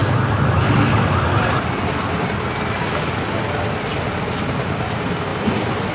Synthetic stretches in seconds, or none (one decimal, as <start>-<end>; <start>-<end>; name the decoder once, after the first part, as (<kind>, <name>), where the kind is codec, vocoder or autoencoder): none